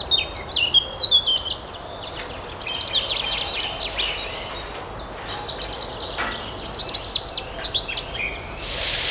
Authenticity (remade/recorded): recorded